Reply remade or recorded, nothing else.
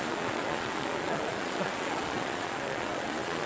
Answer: remade